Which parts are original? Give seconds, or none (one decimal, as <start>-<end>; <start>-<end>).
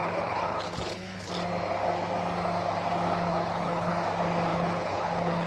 1.3-3.3; 3.9-4.5